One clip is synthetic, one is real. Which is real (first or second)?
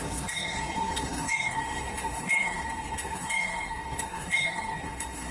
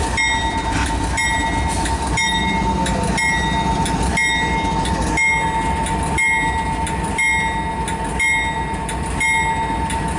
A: second